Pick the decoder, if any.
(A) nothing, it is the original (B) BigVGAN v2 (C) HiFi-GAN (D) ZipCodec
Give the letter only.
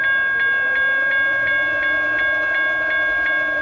A